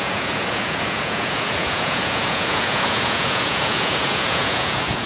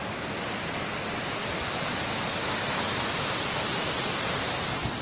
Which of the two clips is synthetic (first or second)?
first